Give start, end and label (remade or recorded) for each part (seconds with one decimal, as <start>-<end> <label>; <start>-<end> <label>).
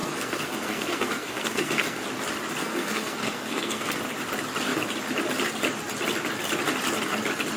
0.0-2.0 remade; 2.0-2.6 recorded; 2.6-4.0 remade; 4.0-7.6 recorded